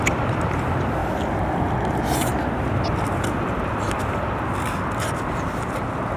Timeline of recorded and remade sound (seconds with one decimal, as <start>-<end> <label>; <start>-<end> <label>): 0.0-1.0 remade; 1.0-1.9 recorded; 1.9-2.4 remade; 2.4-6.2 recorded